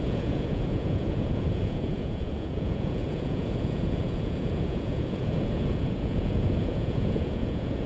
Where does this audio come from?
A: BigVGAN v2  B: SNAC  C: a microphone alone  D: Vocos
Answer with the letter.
D